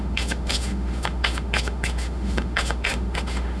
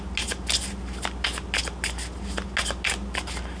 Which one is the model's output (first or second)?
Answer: first